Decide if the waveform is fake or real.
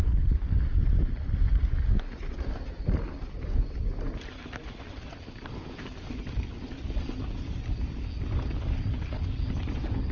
real